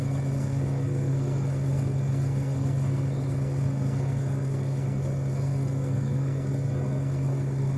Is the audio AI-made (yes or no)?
yes